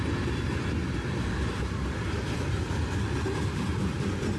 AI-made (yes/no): no